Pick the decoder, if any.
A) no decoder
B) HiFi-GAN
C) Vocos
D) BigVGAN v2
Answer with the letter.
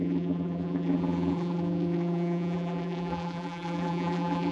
D